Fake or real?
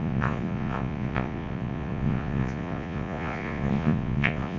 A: fake